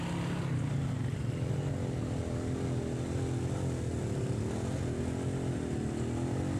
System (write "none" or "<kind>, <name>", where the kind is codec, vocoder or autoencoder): none